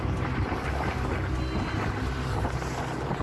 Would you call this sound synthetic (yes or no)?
no